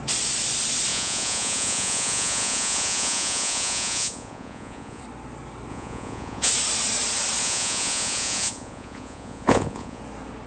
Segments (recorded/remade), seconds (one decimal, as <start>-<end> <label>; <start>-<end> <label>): 0.0-0.9 recorded; 0.9-5.0 remade; 5.0-5.7 recorded; 5.7-6.5 remade; 6.5-7.4 recorded; 7.4-10.0 remade; 10.0-10.5 recorded